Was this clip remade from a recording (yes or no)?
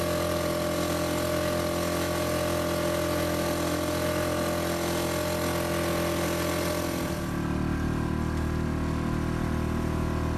no